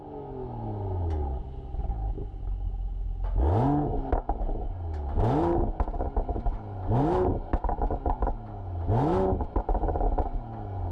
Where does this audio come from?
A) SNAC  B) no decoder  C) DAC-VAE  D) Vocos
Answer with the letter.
B